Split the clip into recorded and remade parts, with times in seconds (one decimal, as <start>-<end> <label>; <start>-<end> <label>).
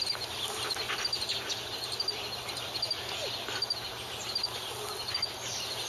0.0-5.9 recorded